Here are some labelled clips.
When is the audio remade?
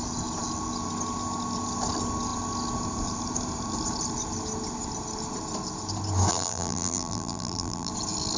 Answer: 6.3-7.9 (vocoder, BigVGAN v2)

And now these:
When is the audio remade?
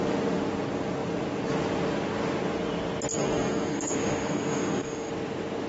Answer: 3.1-5.1 (codec, DAC)